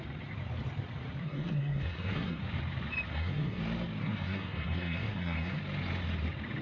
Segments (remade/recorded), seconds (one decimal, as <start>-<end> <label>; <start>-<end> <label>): 0.0-1.2 recorded; 1.2-2.4 remade; 2.4-3.1 recorded; 3.1-3.6 remade; 3.6-4.0 recorded; 4.0-5.6 remade; 5.6-6.6 recorded